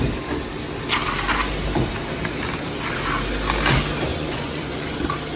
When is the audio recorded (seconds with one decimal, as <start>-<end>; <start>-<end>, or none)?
0.0-4.1; 5.0-5.4